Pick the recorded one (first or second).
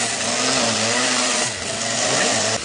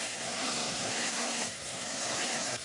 first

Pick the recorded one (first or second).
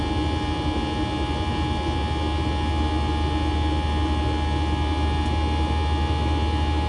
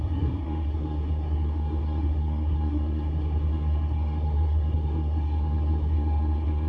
first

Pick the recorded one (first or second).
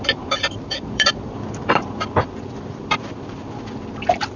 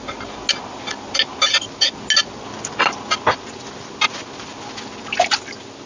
second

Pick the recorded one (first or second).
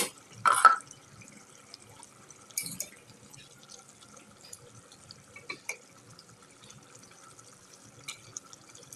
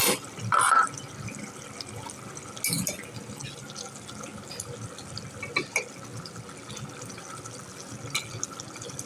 second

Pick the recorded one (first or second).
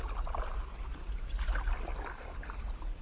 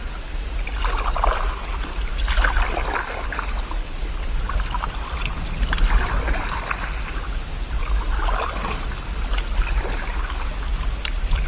second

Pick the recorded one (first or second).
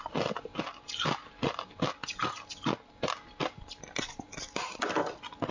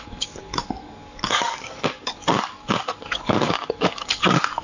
first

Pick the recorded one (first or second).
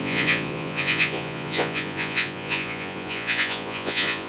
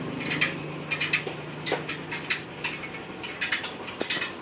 second